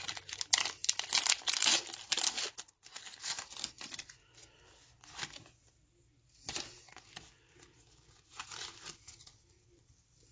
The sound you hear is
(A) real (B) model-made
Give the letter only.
A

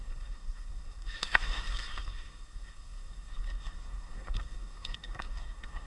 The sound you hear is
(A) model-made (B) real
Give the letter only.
A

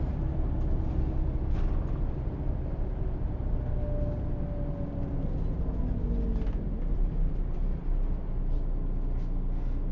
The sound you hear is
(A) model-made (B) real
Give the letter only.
B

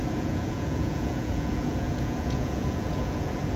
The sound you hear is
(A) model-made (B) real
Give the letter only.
A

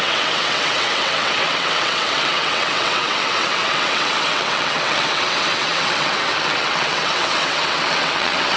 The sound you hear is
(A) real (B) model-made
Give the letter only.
B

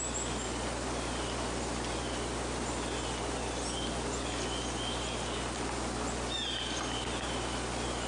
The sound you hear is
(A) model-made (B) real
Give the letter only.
B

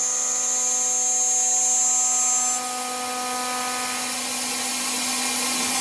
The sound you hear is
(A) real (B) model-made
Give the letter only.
A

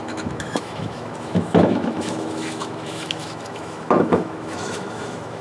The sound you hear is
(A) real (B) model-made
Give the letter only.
B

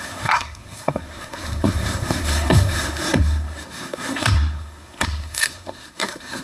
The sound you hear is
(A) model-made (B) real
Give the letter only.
A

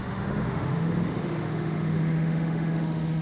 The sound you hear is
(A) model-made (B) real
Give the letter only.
A